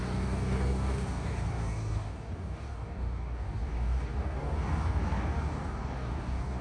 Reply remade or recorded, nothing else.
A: remade